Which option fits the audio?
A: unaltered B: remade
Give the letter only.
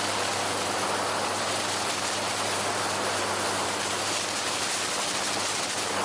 A